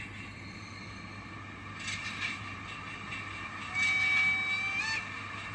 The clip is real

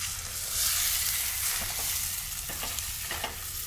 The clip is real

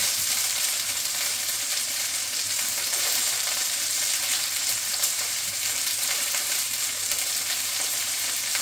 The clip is fake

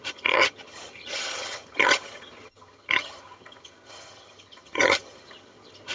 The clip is fake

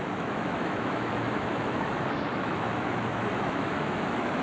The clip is fake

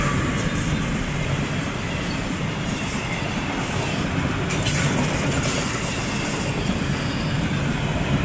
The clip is real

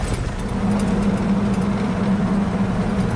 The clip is real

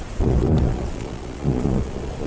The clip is fake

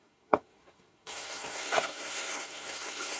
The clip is fake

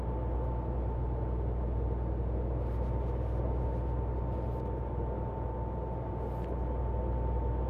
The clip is real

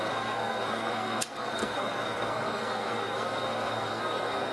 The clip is fake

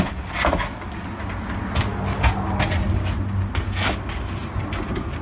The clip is real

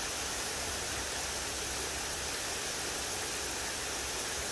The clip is real